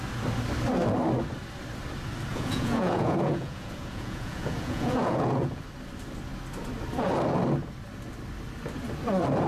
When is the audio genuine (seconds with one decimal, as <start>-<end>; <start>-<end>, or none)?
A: 0.0-2.3; 5.6-9.5